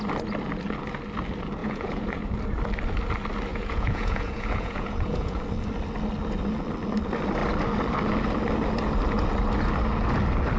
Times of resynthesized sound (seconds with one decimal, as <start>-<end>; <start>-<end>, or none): 1.6-2.4; 3.5-5.4